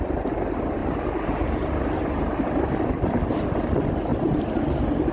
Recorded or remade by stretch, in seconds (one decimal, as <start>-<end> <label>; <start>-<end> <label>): 0.0-0.8 recorded; 0.8-2.9 remade; 2.9-5.1 recorded